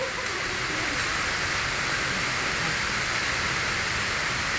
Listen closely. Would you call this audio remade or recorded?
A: recorded